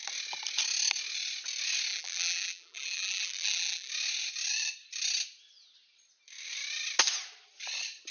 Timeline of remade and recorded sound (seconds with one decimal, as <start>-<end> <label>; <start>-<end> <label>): 0.0-1.9 recorded; 1.9-3.9 remade; 3.9-8.1 recorded